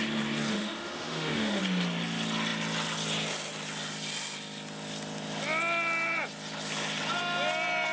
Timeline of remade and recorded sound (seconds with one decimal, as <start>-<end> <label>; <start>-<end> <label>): 0.0-0.5 recorded; 0.5-1.6 remade; 1.6-7.9 recorded